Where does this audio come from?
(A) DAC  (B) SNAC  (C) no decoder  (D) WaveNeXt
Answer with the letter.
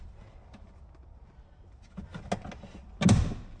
C